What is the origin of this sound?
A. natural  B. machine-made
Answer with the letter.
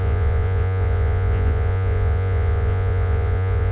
B